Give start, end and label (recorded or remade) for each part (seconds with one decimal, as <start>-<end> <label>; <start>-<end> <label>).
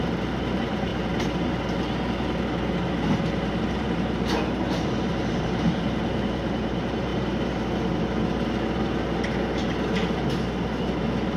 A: 0.0-0.9 remade; 0.9-3.7 recorded; 3.7-7.1 remade; 7.1-11.4 recorded